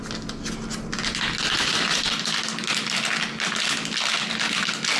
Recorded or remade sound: recorded